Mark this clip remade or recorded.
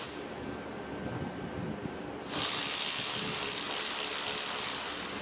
recorded